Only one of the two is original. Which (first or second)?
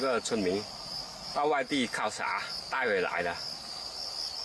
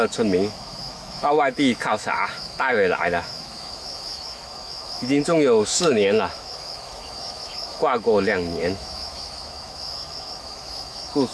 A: first